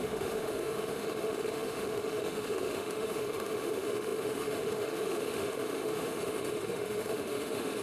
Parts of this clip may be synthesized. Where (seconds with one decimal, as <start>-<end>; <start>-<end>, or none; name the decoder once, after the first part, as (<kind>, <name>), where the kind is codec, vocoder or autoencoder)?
0.0-7.8 (autoencoder, DAC-VAE)